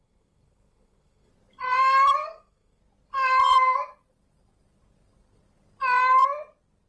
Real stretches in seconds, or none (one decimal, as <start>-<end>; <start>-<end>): 1.3-2.2; 2.8-6.9